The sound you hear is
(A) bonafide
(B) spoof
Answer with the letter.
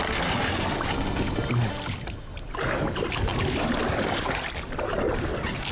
A